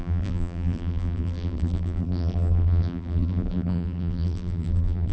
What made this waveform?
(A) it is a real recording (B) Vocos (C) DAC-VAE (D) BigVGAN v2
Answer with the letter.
D